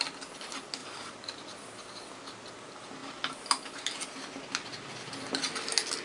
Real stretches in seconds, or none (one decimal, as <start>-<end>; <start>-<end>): 0.0-6.0